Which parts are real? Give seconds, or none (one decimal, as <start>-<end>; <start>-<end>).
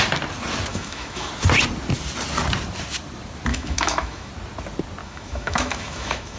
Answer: 0.0-0.7; 1.3-3.5; 4.3-5.0